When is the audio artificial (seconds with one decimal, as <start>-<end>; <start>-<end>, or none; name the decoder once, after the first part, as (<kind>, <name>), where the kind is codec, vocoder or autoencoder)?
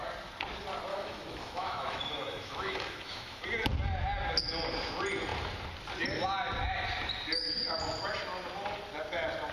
0.9-3.4 (autoencoder, DAC-VAE)